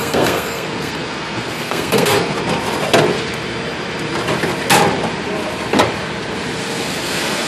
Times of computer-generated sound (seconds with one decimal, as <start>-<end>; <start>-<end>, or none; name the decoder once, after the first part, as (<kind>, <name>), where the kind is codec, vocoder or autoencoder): 0.0-2.4 (codec, SNAC); 6.6-7.5